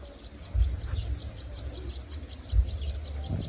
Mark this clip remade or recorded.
recorded